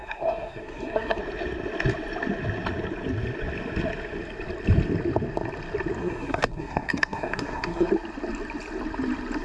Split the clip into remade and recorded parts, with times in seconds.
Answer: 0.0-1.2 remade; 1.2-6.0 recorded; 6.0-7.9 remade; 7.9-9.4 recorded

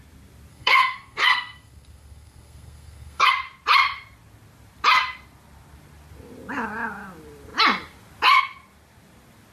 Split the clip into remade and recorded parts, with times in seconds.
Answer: 0.0-0.5 recorded; 0.5-3.3 remade; 3.3-9.5 recorded

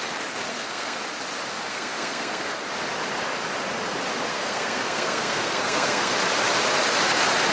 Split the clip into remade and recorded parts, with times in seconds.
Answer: 0.0-0.5 recorded; 0.5-1.0 remade; 1.0-1.7 recorded; 1.7-2.6 remade; 2.6-4.3 recorded; 4.3-6.1 remade; 6.1-7.5 recorded

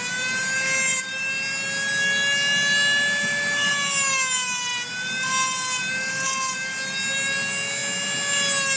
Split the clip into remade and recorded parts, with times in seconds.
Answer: 0.0-8.8 recorded

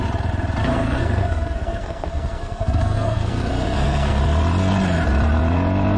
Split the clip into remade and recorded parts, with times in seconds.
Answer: 0.0-0.6 recorded; 0.6-4.2 remade; 4.2-6.0 recorded

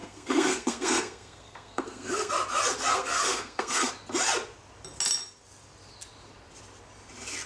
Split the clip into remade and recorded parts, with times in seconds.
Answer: 0.0-2.3 remade; 2.3-2.9 recorded; 2.9-3.9 remade; 3.9-7.5 recorded

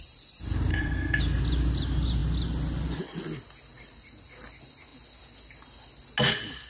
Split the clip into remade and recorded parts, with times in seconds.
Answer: 0.0-0.7 recorded; 0.7-1.2 remade; 1.2-6.7 recorded